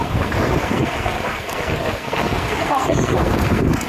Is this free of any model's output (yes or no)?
no